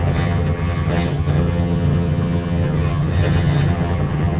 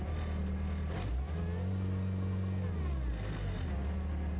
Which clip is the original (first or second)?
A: second